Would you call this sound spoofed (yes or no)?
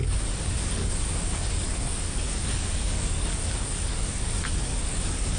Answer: yes